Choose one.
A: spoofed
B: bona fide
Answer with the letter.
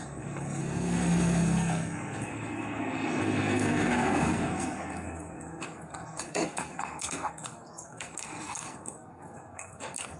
A